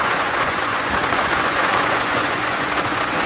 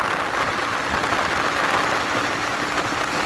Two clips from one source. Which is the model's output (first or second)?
first